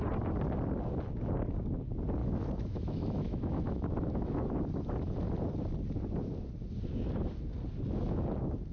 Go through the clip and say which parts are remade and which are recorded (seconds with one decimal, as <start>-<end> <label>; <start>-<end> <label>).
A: 0.0-2.2 recorded; 2.2-4.5 remade; 4.5-8.7 recorded